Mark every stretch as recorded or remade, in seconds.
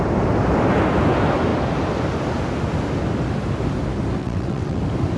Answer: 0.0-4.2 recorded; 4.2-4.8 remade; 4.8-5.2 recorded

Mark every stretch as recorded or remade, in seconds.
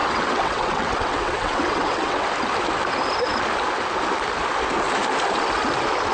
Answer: 0.0-2.2 remade; 2.2-6.1 recorded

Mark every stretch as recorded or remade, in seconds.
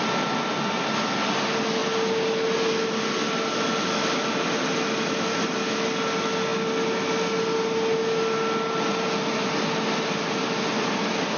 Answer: 0.0-11.4 recorded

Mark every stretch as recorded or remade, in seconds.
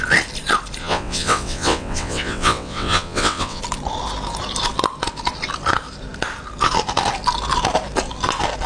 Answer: 0.0-0.8 recorded; 0.8-3.6 remade; 3.6-8.7 recorded